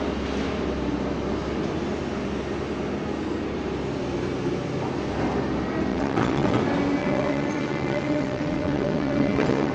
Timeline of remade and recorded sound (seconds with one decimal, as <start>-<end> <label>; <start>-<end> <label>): 0.0-5.9 recorded; 5.9-6.6 remade; 6.6-7.0 recorded; 7.0-9.7 remade